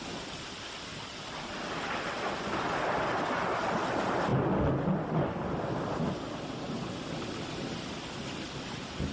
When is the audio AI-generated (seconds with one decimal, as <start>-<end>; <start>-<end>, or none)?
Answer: none